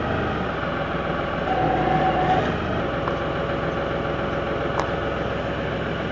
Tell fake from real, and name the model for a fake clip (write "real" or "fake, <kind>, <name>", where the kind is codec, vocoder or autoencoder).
real